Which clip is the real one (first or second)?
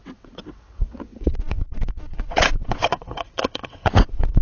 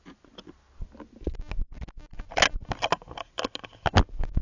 second